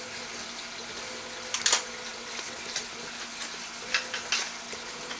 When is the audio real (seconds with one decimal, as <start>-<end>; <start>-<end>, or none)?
0.0-5.2